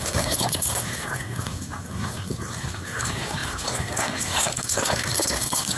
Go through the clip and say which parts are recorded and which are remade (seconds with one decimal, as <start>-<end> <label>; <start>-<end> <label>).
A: 0.0-5.8 remade